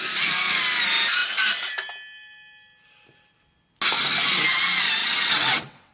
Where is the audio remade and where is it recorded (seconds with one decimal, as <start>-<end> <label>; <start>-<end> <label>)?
0.0-5.0 recorded; 5.0-5.9 remade